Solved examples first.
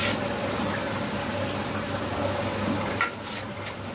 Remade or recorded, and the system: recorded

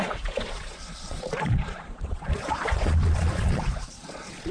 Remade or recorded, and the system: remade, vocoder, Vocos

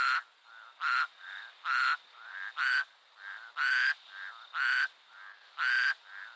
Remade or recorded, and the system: recorded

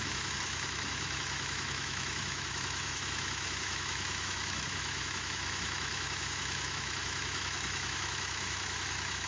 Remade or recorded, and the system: remade, autoencoder, DAC-VAE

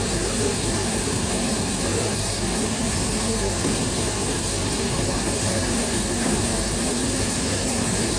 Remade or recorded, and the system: remade, codec, SNAC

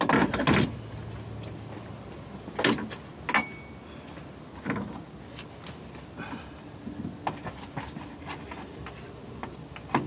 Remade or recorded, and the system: recorded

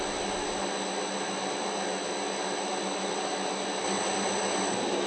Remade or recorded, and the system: recorded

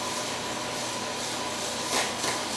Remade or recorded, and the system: recorded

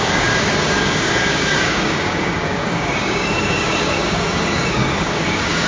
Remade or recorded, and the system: remade, codec, DAC